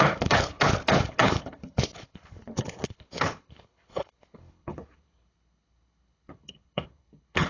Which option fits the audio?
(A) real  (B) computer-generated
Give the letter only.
B